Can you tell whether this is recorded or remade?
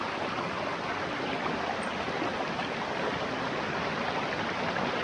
recorded